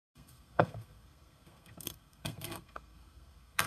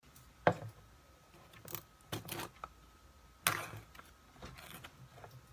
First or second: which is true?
second